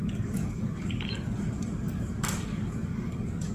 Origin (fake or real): fake